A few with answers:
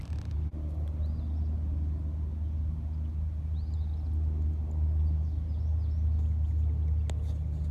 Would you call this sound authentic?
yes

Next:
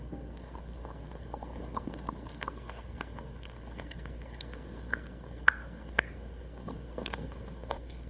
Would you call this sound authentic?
no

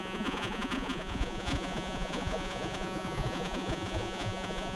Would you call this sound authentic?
no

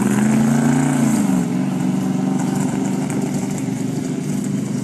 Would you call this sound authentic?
yes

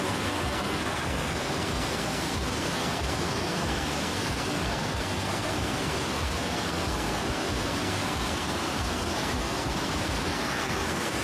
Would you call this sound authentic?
no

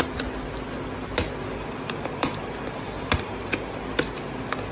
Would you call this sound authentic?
yes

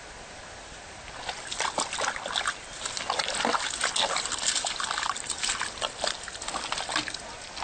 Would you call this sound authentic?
yes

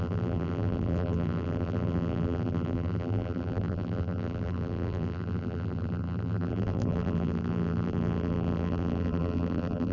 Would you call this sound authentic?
no